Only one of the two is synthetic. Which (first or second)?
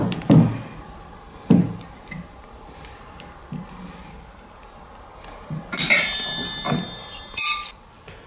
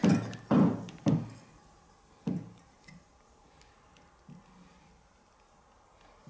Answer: first